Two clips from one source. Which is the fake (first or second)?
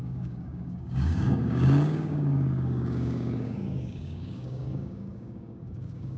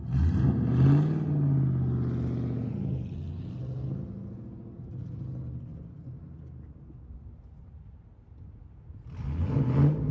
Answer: first